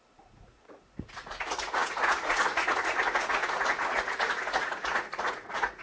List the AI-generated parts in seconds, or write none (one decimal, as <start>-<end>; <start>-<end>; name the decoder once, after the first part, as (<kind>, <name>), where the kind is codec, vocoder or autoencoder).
0.0-5.8 (vocoder, Vocos)